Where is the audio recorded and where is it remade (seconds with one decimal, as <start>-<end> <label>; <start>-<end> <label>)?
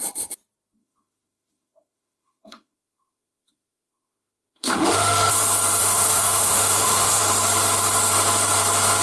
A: 0.0-0.8 recorded; 0.8-5.3 remade; 5.3-5.8 recorded; 5.8-7.2 remade; 7.2-9.0 recorded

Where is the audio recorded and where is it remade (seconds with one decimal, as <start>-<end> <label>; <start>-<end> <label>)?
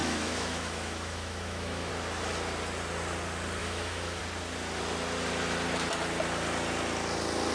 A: 0.0-1.9 remade; 1.9-3.6 recorded; 3.6-4.2 remade; 4.2-7.5 recorded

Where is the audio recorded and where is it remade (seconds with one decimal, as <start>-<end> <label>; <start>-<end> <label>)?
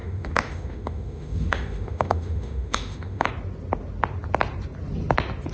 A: 0.0-3.3 remade; 3.3-5.5 recorded